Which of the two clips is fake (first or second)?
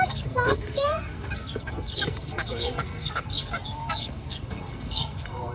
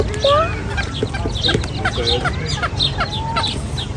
first